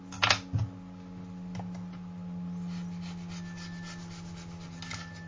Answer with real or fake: real